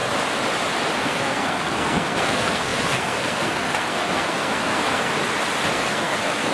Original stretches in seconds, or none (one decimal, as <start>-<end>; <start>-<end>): 0.0-1.0; 5.1-5.7